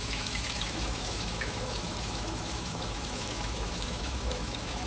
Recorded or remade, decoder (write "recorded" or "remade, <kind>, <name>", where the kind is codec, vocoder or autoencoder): remade, autoencoder, DAC-VAE